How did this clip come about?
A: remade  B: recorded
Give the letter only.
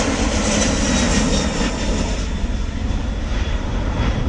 B